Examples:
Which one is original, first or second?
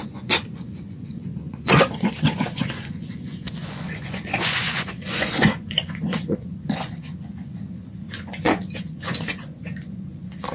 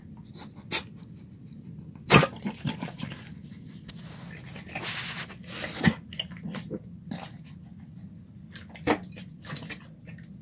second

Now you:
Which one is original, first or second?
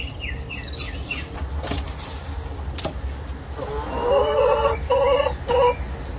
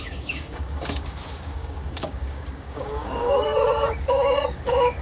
first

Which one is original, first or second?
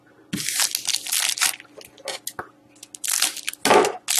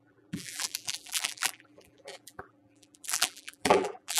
first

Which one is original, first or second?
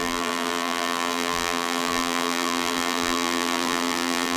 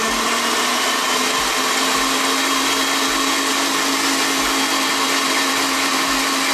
second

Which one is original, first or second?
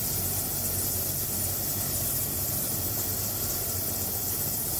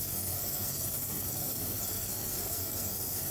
first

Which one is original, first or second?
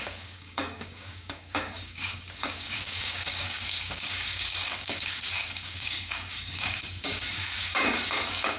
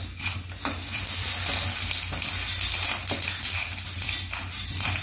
second